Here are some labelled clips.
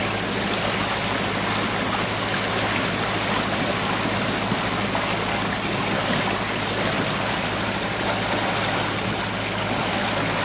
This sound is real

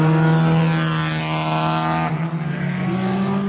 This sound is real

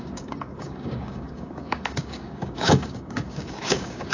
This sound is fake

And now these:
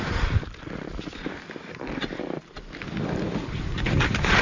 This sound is fake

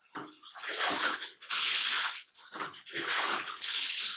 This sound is fake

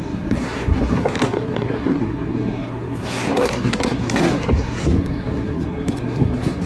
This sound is fake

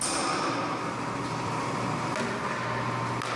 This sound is real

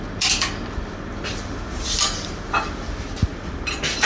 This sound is real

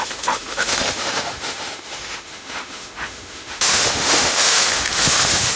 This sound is fake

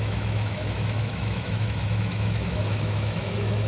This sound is fake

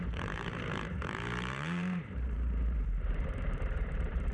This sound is fake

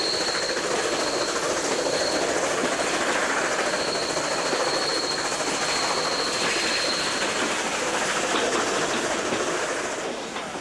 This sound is real